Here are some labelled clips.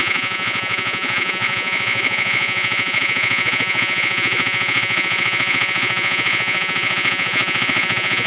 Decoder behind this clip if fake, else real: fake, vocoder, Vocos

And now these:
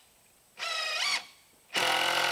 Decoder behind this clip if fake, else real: fake, vocoder, BigVGAN v2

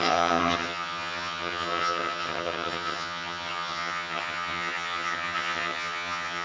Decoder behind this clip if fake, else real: fake, vocoder, HiFi-GAN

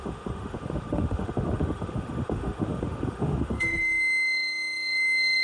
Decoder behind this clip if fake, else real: fake, autoencoder, DAC-VAE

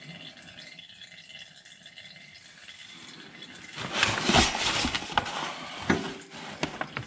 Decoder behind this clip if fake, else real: real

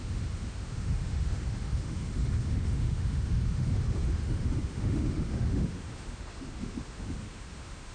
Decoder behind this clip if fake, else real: fake, autoencoder, DAC-VAE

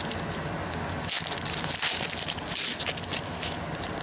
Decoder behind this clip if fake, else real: real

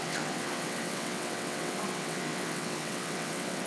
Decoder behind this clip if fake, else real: fake, vocoder, WaveNeXt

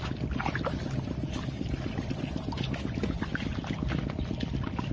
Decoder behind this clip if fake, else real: real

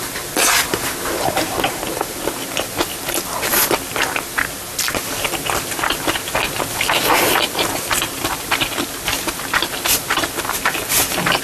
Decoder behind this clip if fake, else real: real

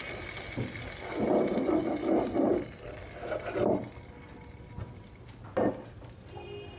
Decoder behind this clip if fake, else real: real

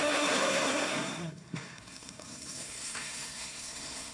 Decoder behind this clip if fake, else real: fake, codec, SNAC